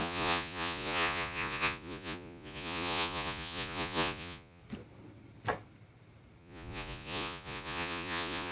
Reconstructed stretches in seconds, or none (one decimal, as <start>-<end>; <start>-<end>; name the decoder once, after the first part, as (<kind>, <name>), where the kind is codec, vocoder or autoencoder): 0.0-4.6 (vocoder, Vocos); 6.4-8.5